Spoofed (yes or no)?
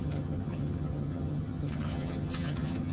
yes